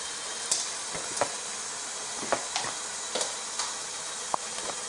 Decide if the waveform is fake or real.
real